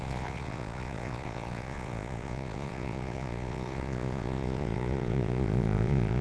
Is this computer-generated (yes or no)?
yes